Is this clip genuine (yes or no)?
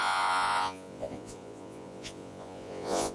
no